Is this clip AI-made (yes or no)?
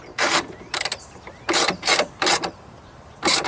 yes